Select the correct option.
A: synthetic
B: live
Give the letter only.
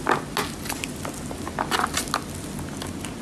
B